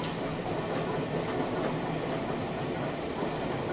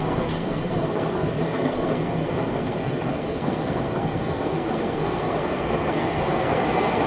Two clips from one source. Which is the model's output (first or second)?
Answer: second